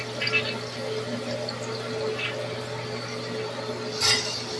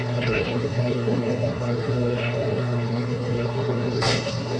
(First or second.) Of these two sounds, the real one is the first